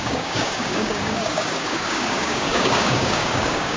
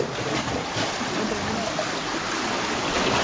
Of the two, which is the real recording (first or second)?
second